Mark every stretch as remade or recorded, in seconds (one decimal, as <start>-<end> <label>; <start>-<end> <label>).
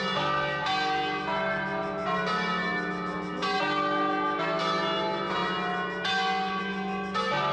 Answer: 0.0-7.5 recorded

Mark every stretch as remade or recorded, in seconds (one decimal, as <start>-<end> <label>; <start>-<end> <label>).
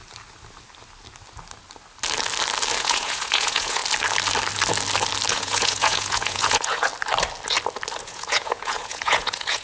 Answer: 0.0-2.8 recorded; 2.8-3.8 remade; 3.8-5.3 recorded; 5.3-6.9 remade; 6.9-8.0 recorded; 8.0-9.6 remade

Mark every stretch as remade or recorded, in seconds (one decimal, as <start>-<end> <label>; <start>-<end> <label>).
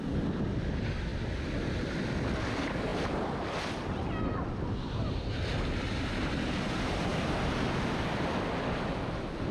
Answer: 0.0-9.5 recorded